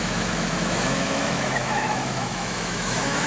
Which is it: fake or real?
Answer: fake